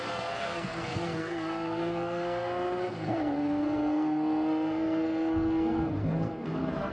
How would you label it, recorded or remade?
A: remade